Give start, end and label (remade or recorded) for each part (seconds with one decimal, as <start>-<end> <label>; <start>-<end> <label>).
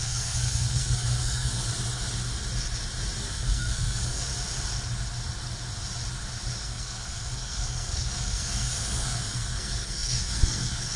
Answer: 0.0-1.6 remade; 1.6-3.2 recorded; 3.2-4.3 remade; 4.3-6.6 recorded; 6.6-11.0 remade